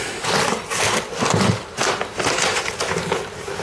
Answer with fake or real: real